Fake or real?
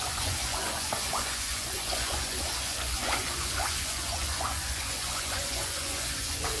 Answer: fake